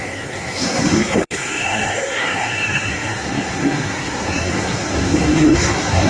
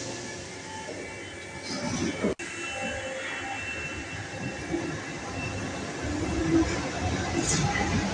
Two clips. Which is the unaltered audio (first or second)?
second